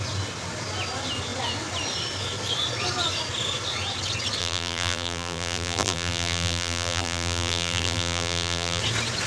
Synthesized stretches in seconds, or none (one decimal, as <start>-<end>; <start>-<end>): 4.4-8.8